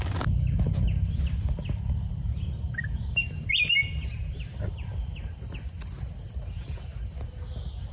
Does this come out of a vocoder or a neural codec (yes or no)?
no